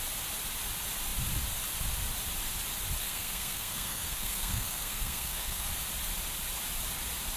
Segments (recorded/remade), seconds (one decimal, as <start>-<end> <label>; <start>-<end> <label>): 0.0-3.0 recorded; 3.0-5.7 remade; 5.7-7.4 recorded